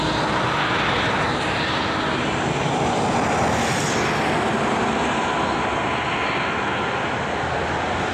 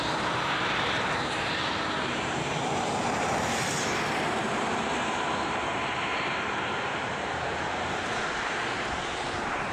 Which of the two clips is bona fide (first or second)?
first